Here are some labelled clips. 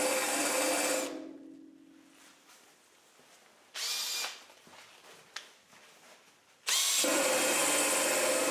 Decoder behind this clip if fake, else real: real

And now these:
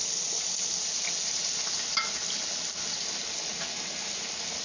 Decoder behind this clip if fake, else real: real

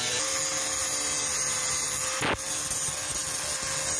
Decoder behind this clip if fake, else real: real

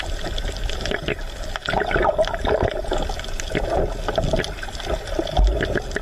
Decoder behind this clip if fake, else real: real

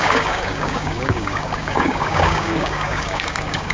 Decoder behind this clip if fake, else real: fake, codec, DAC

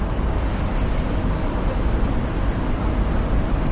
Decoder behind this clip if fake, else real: real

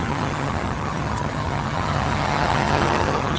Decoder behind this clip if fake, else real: fake, vocoder, HiFi-GAN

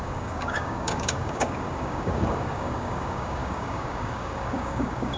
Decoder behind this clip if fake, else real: fake, codec, DAC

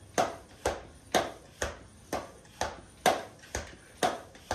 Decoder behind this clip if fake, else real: real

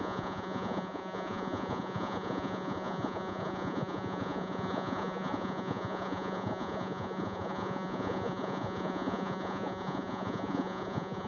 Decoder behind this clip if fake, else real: fake, vocoder, Vocos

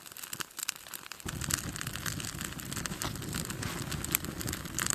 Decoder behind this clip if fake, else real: real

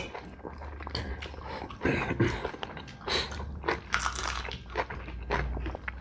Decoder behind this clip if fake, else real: real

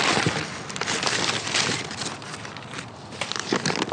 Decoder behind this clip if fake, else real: real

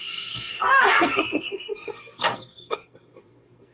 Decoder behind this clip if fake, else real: fake, codec, SNAC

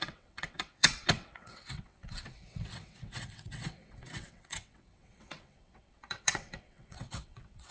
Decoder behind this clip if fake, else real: fake, vocoder, WaveNeXt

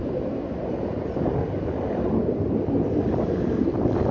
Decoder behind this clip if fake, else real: real